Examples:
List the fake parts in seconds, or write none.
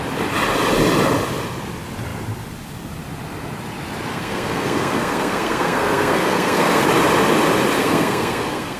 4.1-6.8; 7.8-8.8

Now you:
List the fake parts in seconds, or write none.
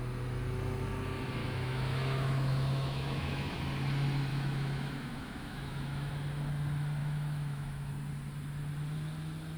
1.4-3.6; 4.3-6.1; 7.0-7.9